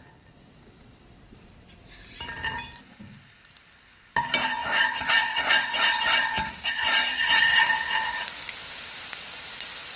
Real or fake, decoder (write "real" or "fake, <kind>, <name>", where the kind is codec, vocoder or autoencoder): fake, vocoder, BigVGAN v2